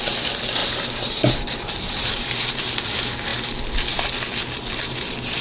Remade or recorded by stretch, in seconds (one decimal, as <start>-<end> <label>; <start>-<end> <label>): 0.0-0.6 recorded; 0.6-2.3 remade; 2.3-4.4 recorded; 4.4-5.4 remade

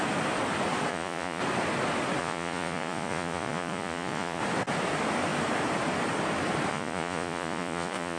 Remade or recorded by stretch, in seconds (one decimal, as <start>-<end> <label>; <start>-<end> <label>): 0.0-0.9 recorded; 0.9-1.4 remade; 1.4-2.2 recorded; 2.2-4.4 remade; 4.4-6.7 recorded; 6.7-8.2 remade

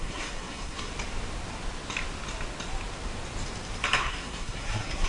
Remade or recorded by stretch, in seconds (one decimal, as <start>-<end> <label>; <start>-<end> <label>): 0.0-0.9 remade; 0.9-4.0 recorded; 4.0-5.1 remade